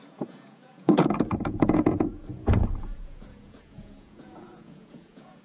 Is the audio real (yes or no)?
no